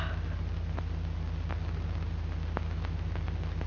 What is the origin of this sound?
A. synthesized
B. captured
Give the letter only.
B